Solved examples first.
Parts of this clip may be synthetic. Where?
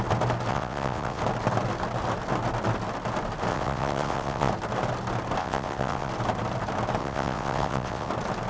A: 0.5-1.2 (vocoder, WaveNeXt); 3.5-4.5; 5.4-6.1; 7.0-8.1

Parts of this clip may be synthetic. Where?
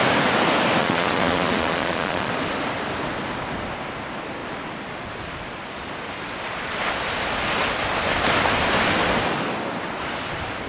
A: 0.8-2.3 (vocoder, Vocos)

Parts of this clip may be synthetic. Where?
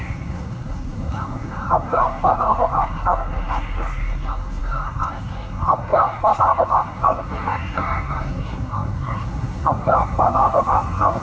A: 0.0-11.2 (codec, SNAC)